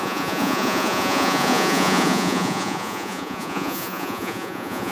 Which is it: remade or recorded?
remade